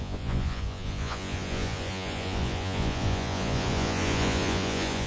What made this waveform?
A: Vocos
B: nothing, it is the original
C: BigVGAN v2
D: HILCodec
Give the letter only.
A